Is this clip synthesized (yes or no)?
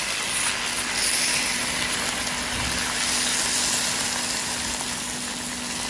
no